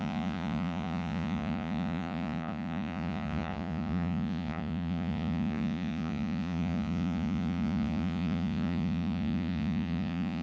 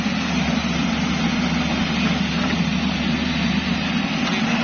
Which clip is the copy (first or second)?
first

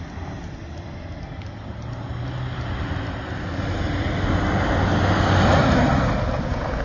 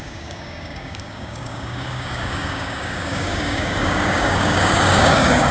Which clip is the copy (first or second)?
second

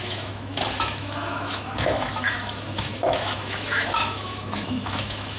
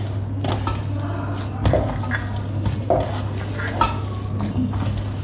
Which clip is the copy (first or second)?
first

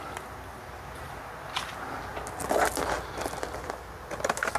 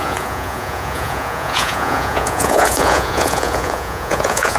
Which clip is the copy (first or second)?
second